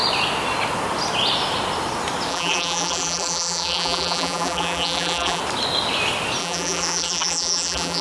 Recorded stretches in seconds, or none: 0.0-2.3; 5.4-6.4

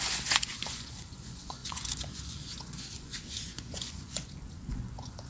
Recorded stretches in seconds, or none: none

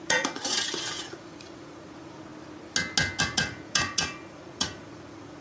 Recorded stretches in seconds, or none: 2.3-3.2

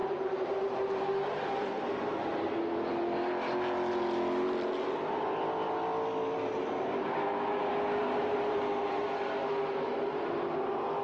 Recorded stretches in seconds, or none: 2.5-8.0; 8.6-11.0

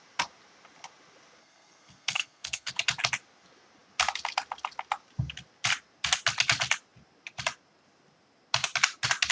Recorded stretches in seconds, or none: 0.0-1.4; 2.7-9.3